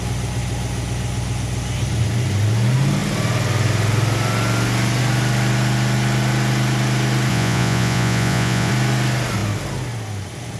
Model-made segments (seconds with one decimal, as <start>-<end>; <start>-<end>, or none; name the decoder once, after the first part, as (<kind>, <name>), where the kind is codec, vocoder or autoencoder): 7.3-8.7 (vocoder, Vocos)